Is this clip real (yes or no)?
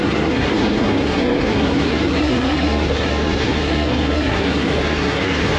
no